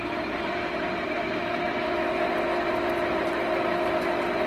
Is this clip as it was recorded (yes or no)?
no